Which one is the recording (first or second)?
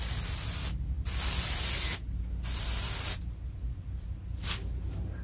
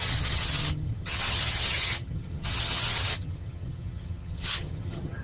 first